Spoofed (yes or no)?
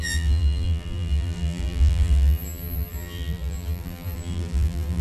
yes